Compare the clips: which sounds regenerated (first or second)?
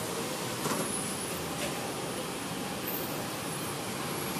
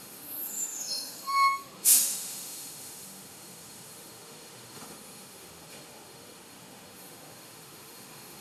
second